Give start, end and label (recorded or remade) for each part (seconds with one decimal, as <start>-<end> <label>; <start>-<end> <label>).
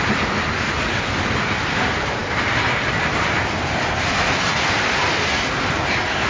0.0-6.3 recorded